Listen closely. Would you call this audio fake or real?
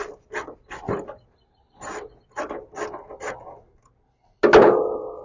real